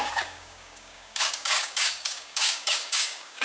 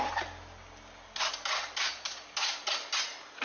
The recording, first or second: second